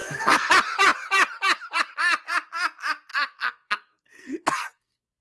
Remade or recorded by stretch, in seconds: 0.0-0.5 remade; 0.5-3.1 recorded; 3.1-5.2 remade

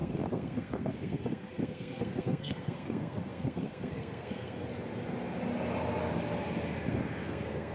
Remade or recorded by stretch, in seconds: 0.0-4.7 remade; 4.7-6.9 recorded; 6.9-7.7 remade

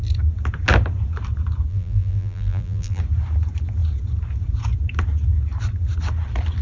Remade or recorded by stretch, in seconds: 0.0-1.7 recorded; 1.7-3.0 remade; 3.0-6.6 recorded